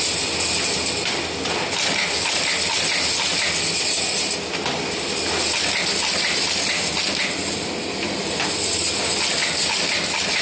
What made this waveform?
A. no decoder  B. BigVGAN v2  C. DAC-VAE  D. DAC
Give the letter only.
A